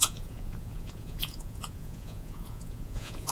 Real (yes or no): no